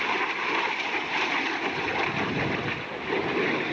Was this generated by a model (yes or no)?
no